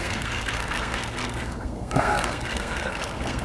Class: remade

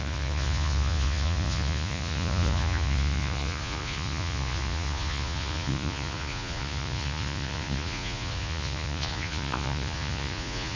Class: remade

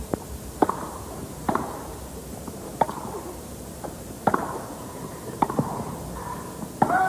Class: remade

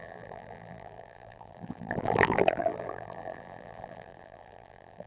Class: remade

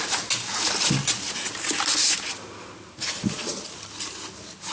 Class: recorded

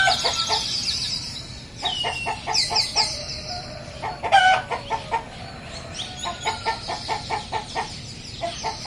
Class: remade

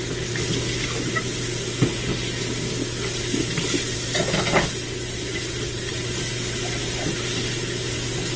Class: recorded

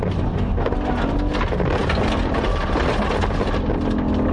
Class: recorded